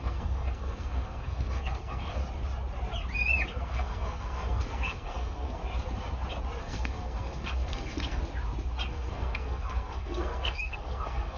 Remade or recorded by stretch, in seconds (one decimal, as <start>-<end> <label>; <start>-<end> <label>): 0.0-2.2 remade; 2.2-3.5 recorded; 3.5-5.6 remade; 5.6-6.6 recorded; 6.6-8.2 remade; 8.2-8.9 recorded; 8.9-11.4 remade